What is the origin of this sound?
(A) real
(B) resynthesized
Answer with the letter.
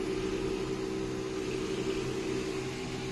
A